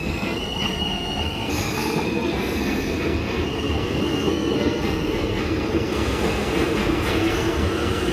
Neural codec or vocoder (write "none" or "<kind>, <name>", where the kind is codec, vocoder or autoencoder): codec, SNAC